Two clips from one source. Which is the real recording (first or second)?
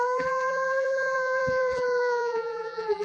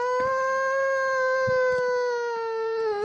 second